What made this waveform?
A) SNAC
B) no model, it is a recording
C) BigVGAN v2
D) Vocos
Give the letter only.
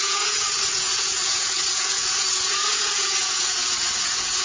D